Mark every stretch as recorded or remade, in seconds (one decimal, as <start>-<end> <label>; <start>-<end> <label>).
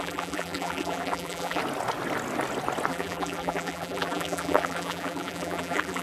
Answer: 0.0-1.6 remade; 1.6-2.9 recorded; 2.9-6.0 remade